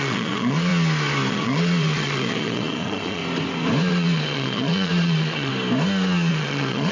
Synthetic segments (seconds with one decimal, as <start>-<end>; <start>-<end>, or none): 0.0-0.7; 1.3-3.2; 3.9-5.5; 6.3-6.9